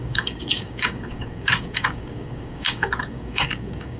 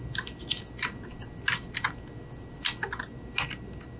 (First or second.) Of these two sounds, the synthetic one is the first